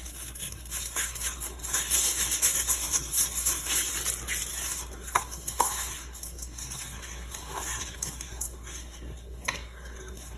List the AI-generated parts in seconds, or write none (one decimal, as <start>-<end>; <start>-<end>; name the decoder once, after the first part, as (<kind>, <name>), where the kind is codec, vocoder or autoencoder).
0.0-3.9 (codec, SNAC); 4.5-10.4